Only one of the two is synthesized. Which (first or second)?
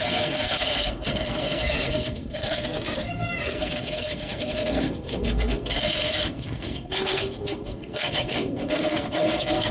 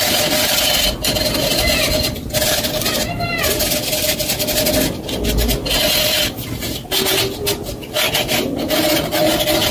first